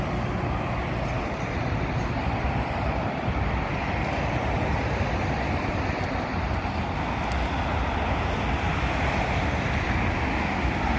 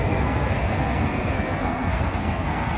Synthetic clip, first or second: second